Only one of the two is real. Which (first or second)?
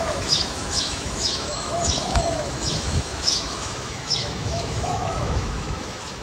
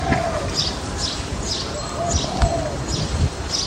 second